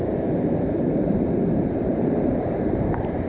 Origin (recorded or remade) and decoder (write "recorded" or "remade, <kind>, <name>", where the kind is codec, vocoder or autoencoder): remade, vocoder, BigVGAN v2